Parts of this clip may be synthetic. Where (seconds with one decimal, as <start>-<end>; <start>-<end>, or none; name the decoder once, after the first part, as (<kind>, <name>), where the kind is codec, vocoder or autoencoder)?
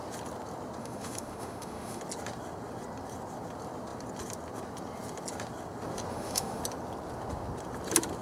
0.8-2.0 (autoencoder, DAC-VAE); 6.1-6.6